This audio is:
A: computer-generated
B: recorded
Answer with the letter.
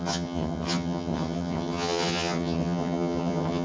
A